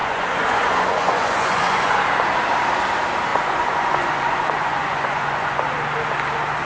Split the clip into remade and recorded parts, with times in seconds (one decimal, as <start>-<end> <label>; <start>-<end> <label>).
0.0-2.0 remade; 2.0-3.3 recorded; 3.3-5.6 remade; 5.6-6.6 recorded